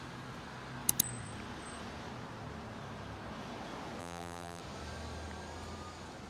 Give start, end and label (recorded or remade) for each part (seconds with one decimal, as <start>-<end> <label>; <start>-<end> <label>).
0.0-4.0 recorded; 4.0-4.6 remade; 4.6-6.3 recorded